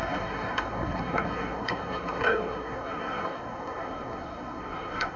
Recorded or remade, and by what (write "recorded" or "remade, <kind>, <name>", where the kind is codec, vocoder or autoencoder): remade, codec, SNAC